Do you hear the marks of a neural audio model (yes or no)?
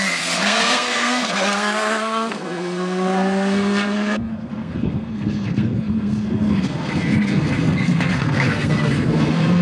yes